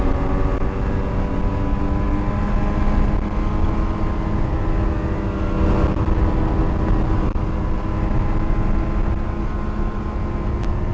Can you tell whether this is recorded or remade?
recorded